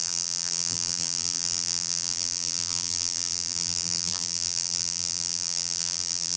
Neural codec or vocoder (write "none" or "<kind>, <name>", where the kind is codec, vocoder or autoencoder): vocoder, BigVGAN v2